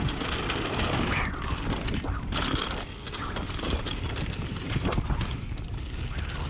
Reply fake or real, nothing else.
real